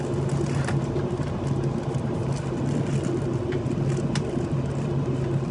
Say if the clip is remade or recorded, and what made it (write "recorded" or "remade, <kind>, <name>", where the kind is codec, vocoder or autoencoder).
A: recorded